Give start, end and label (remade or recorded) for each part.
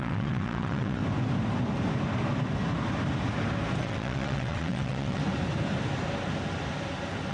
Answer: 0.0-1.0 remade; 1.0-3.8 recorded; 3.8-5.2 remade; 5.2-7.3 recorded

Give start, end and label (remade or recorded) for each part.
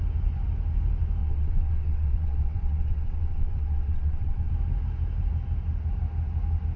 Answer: 0.0-1.2 recorded; 1.2-4.5 remade; 4.5-6.8 recorded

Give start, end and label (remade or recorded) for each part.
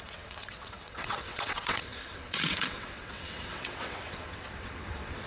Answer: 0.0-5.3 remade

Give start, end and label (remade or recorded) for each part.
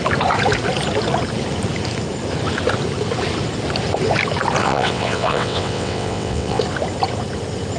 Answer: 0.0-4.6 recorded; 4.6-6.6 remade; 6.6-7.8 recorded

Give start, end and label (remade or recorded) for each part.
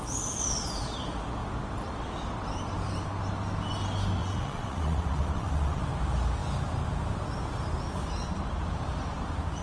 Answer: 0.0-4.2 recorded; 4.2-5.8 remade; 5.8-9.6 recorded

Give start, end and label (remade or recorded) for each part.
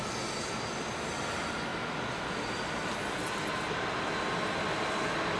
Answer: 0.0-5.4 recorded